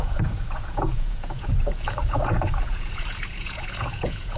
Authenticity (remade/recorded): remade